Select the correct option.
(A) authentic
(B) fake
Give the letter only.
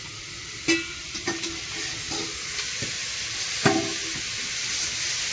A